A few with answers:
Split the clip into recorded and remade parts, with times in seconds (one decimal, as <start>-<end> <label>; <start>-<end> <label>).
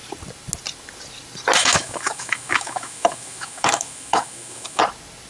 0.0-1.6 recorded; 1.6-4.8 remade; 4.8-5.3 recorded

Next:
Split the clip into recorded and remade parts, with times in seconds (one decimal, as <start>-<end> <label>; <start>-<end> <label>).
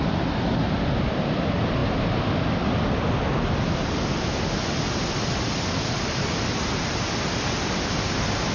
0.0-8.5 recorded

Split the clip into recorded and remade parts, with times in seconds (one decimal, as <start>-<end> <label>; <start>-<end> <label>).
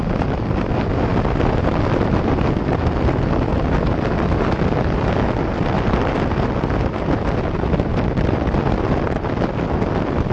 0.0-10.3 recorded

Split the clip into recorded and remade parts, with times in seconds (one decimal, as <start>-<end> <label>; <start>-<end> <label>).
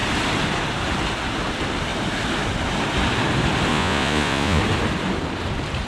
0.0-3.7 recorded; 3.7-4.6 remade; 4.6-5.9 recorded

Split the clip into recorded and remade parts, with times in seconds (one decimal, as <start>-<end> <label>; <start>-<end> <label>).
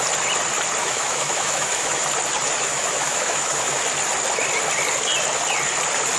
0.0-0.8 recorded; 0.8-2.0 remade; 2.0-2.7 recorded; 2.7-3.8 remade; 3.8-6.2 recorded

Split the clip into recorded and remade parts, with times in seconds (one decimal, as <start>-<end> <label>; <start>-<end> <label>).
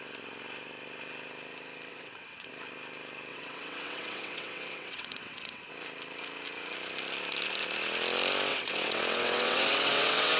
0.0-1.9 recorded; 1.9-2.5 remade; 2.5-3.3 recorded; 3.3-5.7 remade; 5.7-8.5 recorded; 8.5-10.4 remade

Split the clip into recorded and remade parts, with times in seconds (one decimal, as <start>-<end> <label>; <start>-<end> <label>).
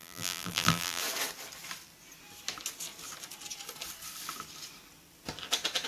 0.0-1.0 remade; 1.0-5.9 recorded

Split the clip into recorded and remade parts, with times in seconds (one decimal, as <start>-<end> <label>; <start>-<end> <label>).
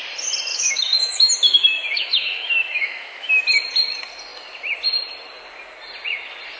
0.0-0.5 recorded; 0.5-3.4 remade; 3.4-6.6 recorded